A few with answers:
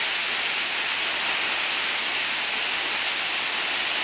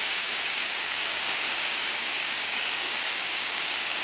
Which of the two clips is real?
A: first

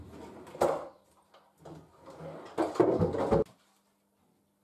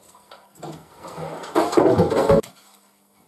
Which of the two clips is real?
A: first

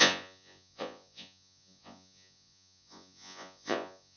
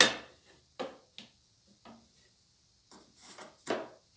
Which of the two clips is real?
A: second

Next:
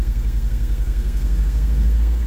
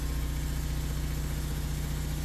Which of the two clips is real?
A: second